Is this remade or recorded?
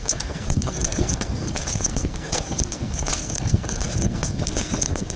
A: remade